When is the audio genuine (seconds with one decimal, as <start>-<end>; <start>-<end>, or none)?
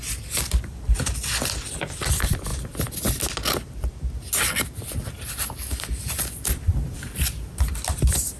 2.5-6.7